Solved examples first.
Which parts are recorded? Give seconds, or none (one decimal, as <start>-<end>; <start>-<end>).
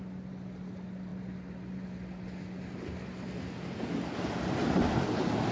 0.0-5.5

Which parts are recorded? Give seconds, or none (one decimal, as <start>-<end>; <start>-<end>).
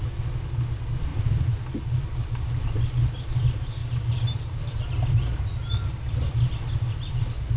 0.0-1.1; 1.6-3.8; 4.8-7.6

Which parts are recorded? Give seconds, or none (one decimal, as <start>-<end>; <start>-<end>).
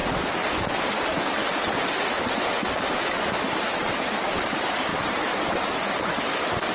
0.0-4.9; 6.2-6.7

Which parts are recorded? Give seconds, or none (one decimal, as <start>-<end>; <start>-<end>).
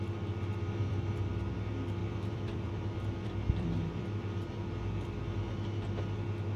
0.0-2.0; 4.4-6.6